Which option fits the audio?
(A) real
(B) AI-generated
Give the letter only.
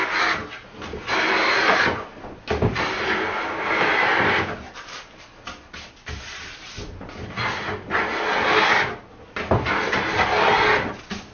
A